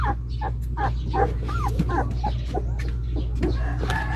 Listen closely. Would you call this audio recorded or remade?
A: recorded